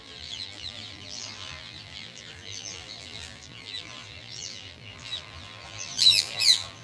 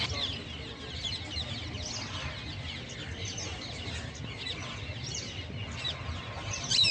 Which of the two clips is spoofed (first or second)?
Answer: first